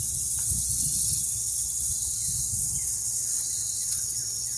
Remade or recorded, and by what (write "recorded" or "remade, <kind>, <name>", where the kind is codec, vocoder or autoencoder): remade, vocoder, WaveNeXt